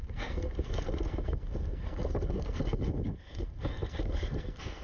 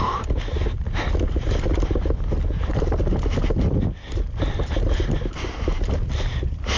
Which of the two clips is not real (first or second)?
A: first